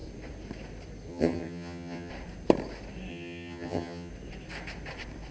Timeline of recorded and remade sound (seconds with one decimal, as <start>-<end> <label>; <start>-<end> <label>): 0.0-1.1 recorded; 1.1-2.1 remade; 2.1-3.1 recorded; 3.1-4.1 remade; 4.1-5.3 recorded